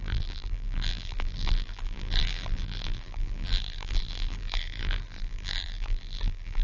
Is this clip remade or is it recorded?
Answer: remade